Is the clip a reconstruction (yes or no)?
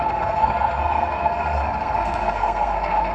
yes